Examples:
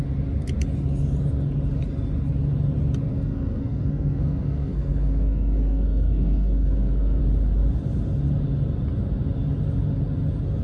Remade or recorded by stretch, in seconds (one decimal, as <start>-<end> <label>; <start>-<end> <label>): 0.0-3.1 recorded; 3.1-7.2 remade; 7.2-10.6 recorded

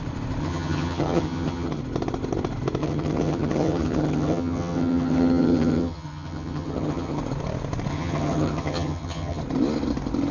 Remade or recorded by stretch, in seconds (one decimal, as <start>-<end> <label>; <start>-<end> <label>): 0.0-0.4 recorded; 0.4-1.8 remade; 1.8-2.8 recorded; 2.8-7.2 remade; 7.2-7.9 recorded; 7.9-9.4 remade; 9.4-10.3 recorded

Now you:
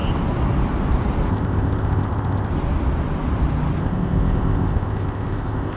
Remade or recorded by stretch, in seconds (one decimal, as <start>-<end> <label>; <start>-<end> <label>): 0.0-1.3 recorded; 1.3-2.5 remade; 2.5-3.8 recorded; 3.8-5.8 remade